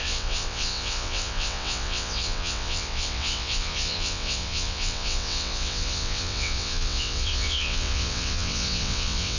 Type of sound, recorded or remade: remade